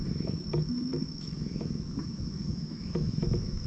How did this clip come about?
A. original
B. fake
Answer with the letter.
B